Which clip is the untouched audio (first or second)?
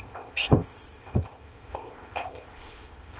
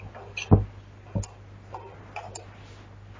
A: second